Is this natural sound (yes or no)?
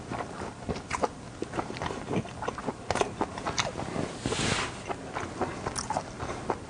yes